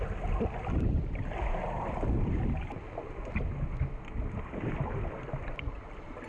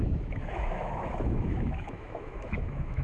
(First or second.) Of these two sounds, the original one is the first